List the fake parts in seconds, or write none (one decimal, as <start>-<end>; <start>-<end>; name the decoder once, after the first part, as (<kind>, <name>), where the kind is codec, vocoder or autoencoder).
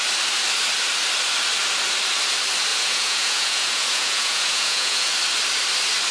2.7-5.1 (vocoder, Vocos)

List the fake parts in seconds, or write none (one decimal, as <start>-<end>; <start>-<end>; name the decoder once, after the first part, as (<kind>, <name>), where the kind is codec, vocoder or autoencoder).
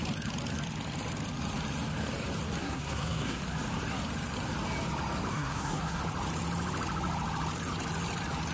2.6-3.4 (codec, SNAC); 5.3-6.0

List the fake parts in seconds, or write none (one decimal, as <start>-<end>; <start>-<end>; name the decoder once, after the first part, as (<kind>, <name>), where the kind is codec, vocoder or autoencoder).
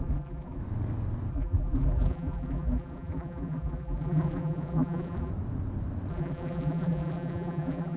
0.0-0.6 (vocoder, BigVGAN v2); 1.3-5.3; 6.1-8.0